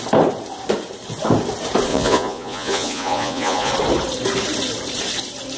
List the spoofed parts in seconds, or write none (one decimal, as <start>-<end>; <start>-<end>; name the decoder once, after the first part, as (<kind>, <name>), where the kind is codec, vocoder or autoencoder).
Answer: 1.9-3.7 (vocoder, Vocos)